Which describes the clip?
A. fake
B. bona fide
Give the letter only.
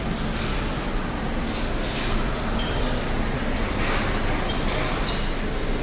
B